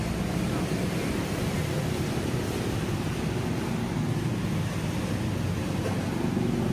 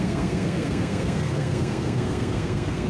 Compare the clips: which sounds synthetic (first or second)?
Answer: second